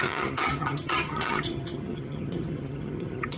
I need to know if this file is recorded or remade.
remade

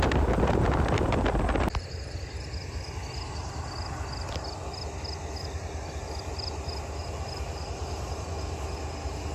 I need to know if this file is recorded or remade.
recorded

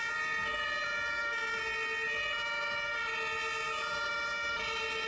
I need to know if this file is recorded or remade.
recorded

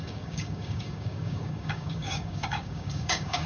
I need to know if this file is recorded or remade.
remade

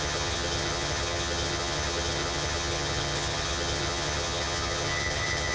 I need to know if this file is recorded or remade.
remade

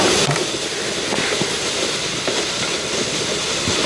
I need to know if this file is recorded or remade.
recorded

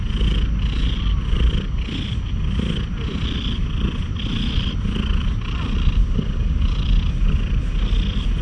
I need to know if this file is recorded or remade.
recorded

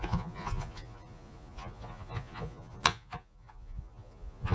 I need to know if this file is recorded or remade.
remade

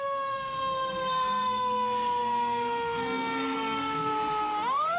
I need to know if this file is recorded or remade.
remade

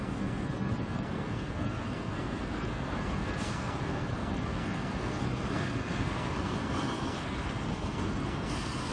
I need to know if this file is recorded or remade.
remade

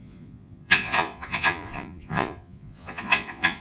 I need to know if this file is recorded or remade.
remade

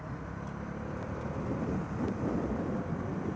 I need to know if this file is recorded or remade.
recorded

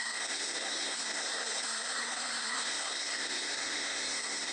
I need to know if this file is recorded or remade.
remade